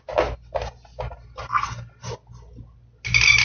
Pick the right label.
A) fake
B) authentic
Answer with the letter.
B